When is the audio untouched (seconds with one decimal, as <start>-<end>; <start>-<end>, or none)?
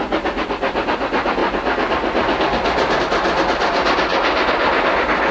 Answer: 0.0-5.3